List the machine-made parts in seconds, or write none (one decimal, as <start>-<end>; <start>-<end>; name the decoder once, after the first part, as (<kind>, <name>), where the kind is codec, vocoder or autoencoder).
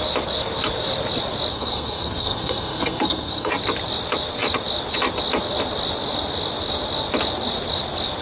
1.5-3.5 (codec, SNAC)